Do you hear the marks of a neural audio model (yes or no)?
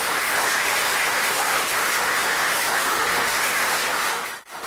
yes